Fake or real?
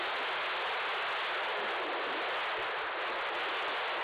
real